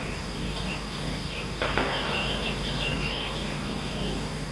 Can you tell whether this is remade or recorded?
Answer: remade